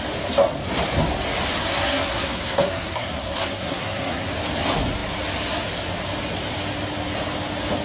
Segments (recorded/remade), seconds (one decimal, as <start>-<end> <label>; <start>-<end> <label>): 0.0-1.6 recorded; 1.6-4.3 remade; 4.3-7.8 recorded